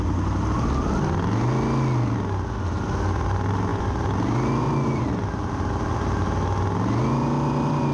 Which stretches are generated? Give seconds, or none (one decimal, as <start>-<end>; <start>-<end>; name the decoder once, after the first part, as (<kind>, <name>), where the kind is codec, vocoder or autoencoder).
none